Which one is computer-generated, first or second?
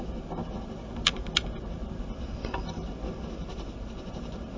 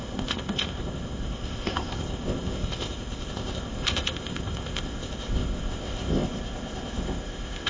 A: second